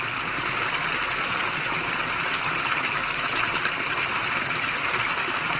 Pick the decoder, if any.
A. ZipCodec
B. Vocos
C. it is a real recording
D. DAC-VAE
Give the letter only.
C